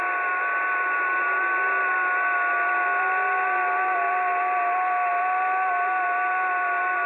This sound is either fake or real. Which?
real